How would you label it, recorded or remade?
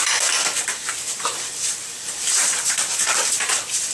remade